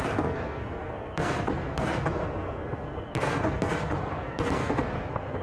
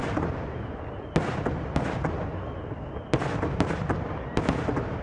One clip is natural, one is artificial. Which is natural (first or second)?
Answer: second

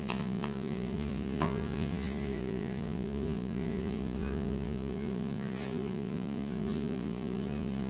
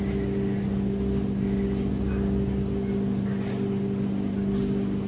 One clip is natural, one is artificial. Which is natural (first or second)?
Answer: second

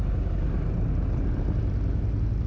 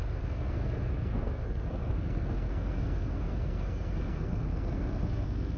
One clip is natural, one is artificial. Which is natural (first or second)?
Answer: first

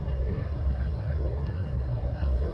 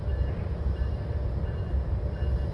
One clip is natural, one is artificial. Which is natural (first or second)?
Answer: second